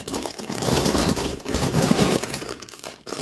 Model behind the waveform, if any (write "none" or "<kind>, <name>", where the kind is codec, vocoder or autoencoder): codec, SNAC